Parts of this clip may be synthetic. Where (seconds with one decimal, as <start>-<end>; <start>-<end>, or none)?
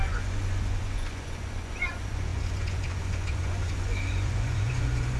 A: 0.0-5.2